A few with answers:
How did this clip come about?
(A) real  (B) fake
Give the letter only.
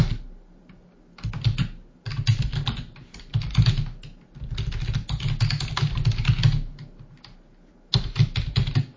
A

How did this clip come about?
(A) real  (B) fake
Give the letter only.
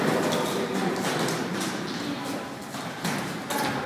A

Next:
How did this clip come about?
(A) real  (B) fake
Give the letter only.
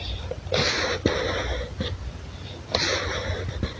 A